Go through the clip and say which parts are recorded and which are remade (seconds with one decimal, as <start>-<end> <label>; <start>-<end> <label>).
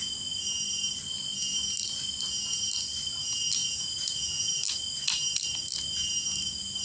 0.0-3.6 recorded; 3.6-4.6 remade; 4.6-6.8 recorded